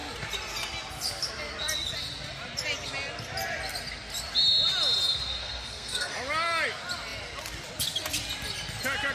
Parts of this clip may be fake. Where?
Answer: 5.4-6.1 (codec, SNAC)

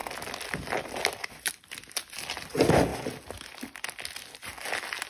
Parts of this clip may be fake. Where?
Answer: none